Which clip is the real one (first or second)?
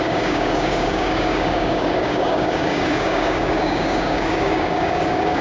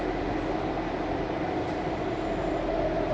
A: second